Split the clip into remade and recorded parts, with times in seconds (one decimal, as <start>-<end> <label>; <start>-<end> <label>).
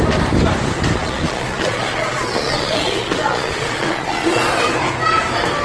0.0-1.0 recorded; 1.0-4.4 remade; 4.4-5.6 recorded